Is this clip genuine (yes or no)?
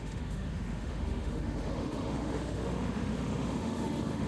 no